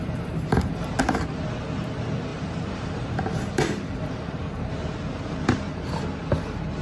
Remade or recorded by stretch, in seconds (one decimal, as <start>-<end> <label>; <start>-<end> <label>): 0.0-1.0 remade; 1.0-2.3 recorded; 2.3-4.7 remade; 4.7-6.8 recorded